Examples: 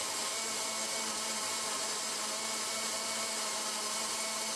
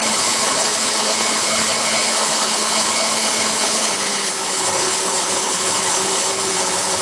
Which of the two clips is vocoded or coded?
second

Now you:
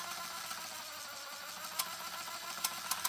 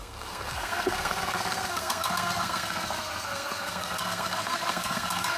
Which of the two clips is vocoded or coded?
second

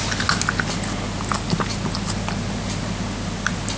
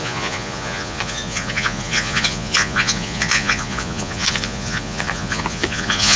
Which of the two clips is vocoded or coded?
second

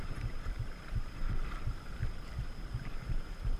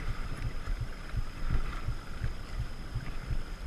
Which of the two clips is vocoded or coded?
first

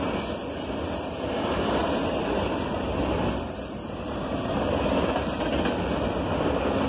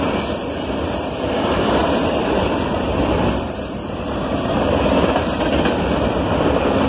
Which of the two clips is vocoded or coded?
second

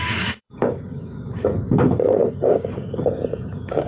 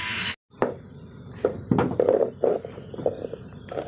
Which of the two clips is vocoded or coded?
first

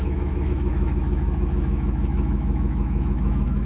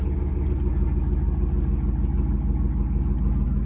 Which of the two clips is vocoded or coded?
first